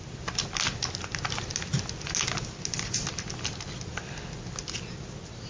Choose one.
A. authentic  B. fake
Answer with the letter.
A